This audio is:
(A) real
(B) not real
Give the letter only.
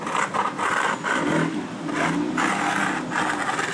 A